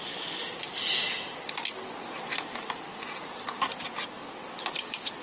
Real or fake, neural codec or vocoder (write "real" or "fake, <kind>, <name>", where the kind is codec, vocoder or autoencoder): real